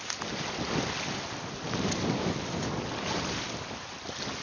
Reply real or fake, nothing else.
real